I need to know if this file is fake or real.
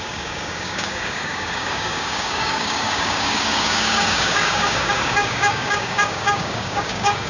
fake